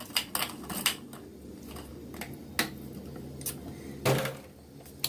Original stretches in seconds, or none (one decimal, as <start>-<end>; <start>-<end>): 0.0-5.1